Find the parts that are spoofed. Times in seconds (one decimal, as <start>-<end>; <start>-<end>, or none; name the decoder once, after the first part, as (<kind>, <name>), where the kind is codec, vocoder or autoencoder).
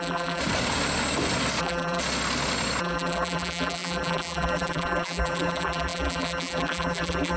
0.0-0.4 (vocoder, BigVGAN v2); 1.6-2.0; 2.8-7.4